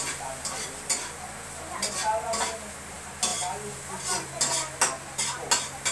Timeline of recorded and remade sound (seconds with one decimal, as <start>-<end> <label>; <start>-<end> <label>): 0.0-5.9 recorded